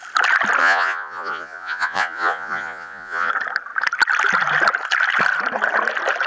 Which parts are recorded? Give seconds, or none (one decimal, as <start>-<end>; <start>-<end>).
0.0-0.6; 3.3-6.3